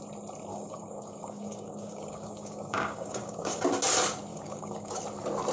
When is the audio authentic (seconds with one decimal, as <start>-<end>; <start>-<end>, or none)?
0.0-0.5; 3.6-4.3; 5.0-5.5